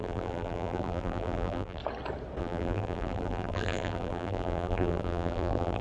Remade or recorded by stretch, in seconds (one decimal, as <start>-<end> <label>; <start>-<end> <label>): 0.0-1.8 remade; 1.8-2.4 recorded; 2.4-5.8 remade